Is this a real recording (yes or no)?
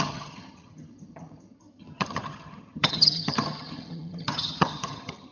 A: no